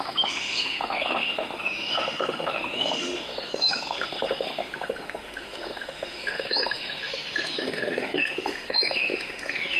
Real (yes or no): no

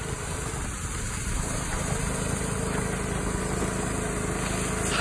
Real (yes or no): yes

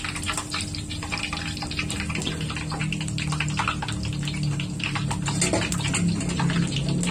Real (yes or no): yes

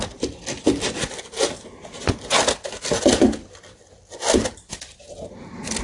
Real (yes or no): yes